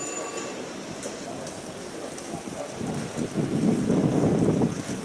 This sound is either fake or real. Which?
real